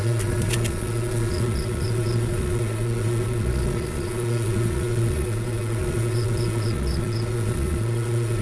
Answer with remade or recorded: remade